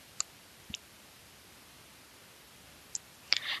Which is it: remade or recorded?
recorded